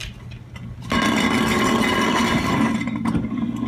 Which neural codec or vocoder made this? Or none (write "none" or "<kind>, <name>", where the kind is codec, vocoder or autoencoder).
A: none